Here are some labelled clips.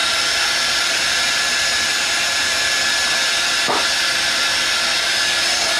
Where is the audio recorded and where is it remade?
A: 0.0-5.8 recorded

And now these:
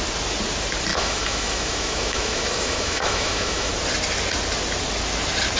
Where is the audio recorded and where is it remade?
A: 0.0-0.9 recorded; 0.9-3.7 remade; 3.7-5.6 recorded

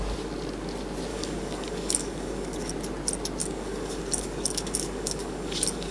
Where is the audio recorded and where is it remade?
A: 0.0-1.1 recorded; 1.1-2.7 remade; 2.7-3.4 recorded; 3.4-5.9 remade

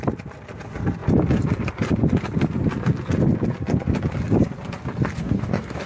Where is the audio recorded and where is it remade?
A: 0.0-5.2 recorded; 5.2-5.9 remade

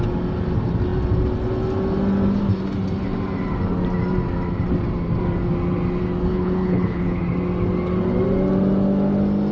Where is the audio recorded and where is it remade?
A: 0.0-6.3 recorded; 6.3-7.2 remade; 7.2-9.5 recorded

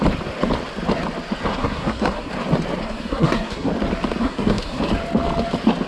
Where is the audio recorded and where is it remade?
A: 0.0-1.5 recorded; 1.5-2.3 remade; 2.3-2.8 recorded; 2.8-3.7 remade; 3.7-4.2 recorded; 4.2-4.8 remade; 4.8-5.9 recorded

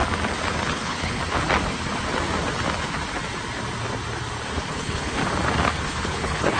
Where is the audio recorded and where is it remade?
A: 0.0-0.7 recorded; 0.7-1.2 remade; 1.2-4.7 recorded; 4.7-5.2 remade; 5.2-5.8 recorded; 5.8-6.6 remade